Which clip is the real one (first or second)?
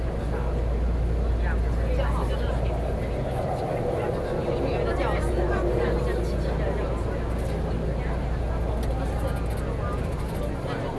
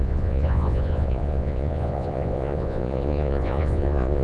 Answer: first